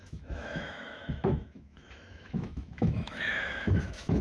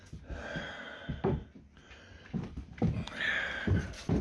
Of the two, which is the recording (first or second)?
second